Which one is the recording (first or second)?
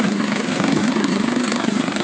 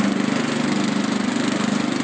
second